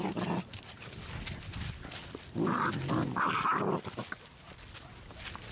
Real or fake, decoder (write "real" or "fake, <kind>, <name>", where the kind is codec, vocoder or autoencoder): real